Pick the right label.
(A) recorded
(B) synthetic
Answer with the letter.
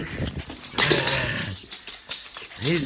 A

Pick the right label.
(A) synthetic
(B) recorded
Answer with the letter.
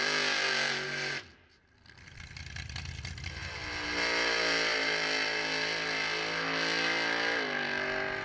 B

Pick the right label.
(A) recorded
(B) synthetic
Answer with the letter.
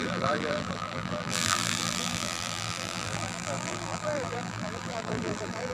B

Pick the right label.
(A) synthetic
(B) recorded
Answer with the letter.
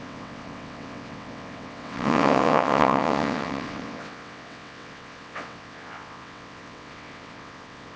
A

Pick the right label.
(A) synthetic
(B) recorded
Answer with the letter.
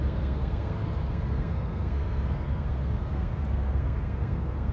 A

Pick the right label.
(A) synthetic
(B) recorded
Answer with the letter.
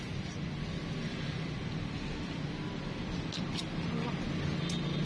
B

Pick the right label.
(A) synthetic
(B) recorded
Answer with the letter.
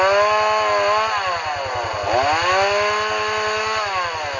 B